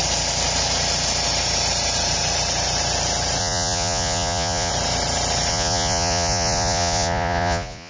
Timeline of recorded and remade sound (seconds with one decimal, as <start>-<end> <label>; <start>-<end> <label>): 0.0-3.4 recorded; 3.4-4.7 remade; 4.7-5.5 recorded; 5.5-7.9 remade